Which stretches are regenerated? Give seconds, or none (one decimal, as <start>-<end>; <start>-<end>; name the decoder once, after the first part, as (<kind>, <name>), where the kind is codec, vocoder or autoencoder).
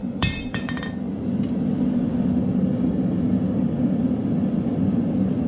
0.0-1.2 (vocoder, BigVGAN v2); 2.7-3.2